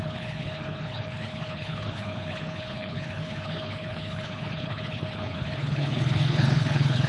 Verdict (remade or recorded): remade